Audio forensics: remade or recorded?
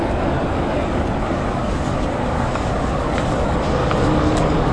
remade